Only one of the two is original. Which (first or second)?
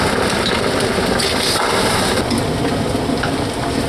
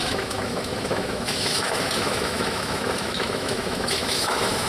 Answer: first